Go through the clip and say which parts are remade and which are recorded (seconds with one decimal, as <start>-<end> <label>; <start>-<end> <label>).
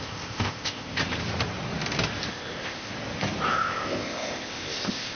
0.0-1.0 remade; 1.0-2.3 recorded; 2.3-2.9 remade; 2.9-3.5 recorded; 3.5-5.1 remade